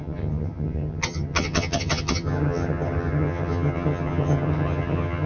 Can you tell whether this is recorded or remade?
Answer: remade